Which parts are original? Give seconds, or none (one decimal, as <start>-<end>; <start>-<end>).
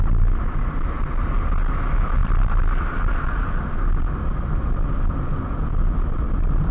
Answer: 0.0-2.2; 5.0-6.7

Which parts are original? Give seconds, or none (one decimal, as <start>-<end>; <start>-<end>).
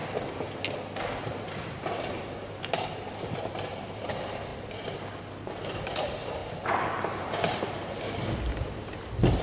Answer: 0.0-1.2; 4.5-5.4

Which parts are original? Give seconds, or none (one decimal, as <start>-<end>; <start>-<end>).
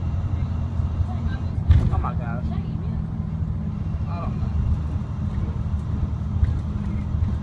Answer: 0.0-7.4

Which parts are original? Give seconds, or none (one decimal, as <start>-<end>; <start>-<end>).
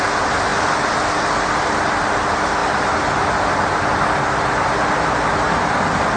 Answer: 0.0-2.6; 3.8-6.2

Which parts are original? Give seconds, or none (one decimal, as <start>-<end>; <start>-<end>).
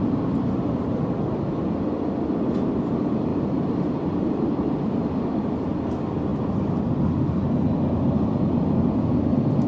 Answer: 0.0-3.3; 5.5-6.3; 6.9-9.7